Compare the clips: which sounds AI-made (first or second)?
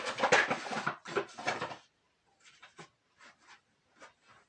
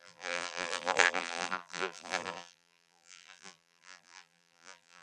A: second